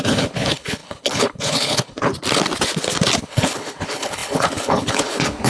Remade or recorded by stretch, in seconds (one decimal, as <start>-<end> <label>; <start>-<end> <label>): 0.0-2.1 remade; 2.1-3.2 recorded; 3.2-5.5 remade